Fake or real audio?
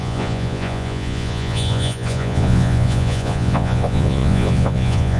fake